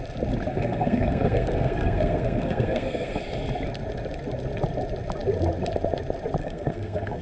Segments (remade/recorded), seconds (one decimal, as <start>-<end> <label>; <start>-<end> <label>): 0.0-0.5 recorded; 0.5-3.2 remade; 3.2-6.4 recorded; 6.4-7.2 remade